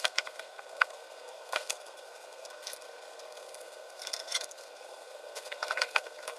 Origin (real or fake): fake